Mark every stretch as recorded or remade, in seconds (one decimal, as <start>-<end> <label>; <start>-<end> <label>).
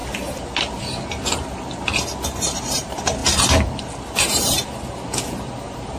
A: 0.0-2.4 recorded; 2.4-3.2 remade; 3.2-3.8 recorded; 3.8-6.0 remade